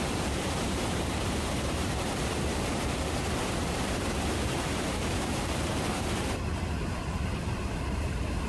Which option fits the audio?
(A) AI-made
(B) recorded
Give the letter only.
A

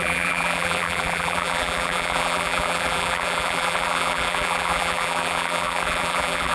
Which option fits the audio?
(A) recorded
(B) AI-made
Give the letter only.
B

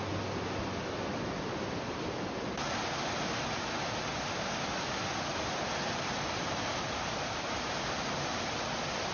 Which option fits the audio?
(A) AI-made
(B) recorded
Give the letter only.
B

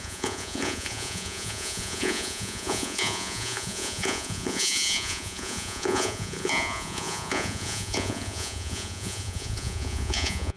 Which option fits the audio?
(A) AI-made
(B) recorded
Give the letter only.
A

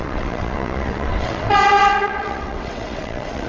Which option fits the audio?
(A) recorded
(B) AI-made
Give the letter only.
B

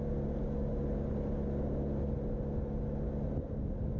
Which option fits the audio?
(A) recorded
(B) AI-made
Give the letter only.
A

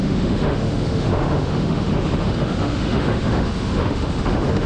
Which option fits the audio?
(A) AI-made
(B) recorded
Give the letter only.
A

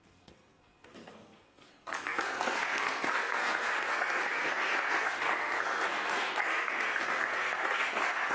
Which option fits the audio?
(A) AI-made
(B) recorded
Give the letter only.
A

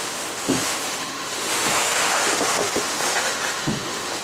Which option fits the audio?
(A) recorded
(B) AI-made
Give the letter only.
B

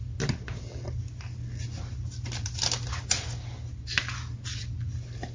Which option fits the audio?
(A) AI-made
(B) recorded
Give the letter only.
B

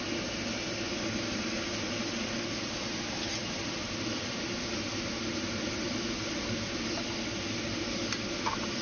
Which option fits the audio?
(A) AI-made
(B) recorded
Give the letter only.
B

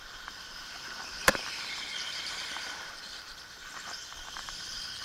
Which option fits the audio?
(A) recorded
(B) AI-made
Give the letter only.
B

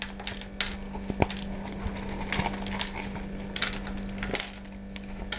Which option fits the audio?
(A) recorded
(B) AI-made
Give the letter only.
A